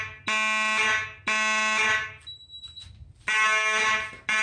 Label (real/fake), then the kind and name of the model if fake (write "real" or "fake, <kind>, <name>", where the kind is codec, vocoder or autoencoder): real